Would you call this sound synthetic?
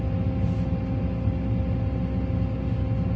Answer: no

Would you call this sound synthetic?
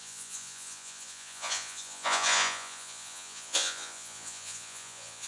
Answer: yes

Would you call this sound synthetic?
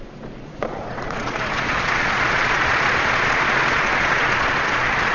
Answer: yes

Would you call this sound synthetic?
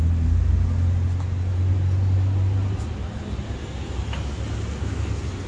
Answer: no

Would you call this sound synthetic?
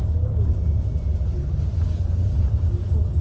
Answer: no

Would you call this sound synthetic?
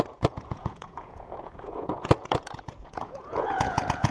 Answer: yes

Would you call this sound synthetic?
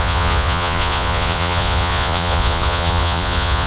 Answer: yes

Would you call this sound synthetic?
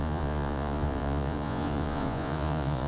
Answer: yes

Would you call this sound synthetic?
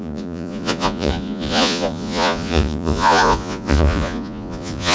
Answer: yes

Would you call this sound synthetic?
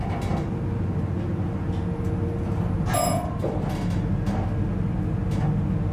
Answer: no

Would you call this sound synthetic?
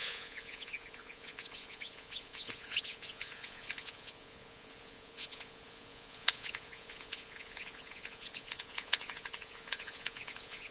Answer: yes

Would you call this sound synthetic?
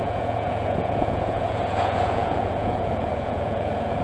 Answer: yes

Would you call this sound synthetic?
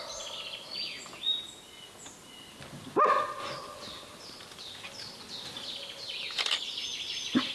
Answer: no